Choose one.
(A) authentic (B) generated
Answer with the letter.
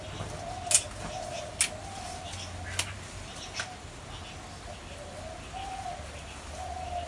A